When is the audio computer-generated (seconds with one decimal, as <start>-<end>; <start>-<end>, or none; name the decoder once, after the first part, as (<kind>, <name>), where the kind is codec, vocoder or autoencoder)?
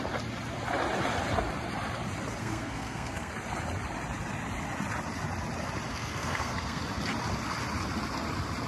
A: 2.4-3.3 (codec, SNAC); 5.9-6.8